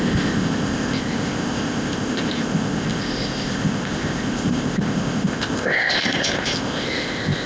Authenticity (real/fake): fake